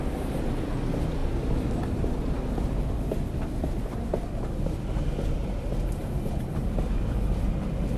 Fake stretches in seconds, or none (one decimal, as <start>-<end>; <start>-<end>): none